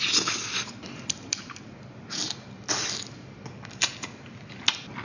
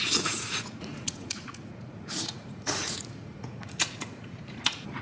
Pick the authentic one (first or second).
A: first